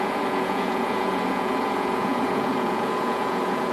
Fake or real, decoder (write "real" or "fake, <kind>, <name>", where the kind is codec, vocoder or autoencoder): fake, vocoder, Vocos